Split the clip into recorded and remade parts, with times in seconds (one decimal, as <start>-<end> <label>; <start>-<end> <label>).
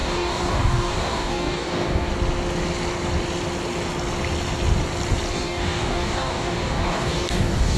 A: 0.0-2.1 remade; 2.1-5.3 recorded; 5.3-7.8 remade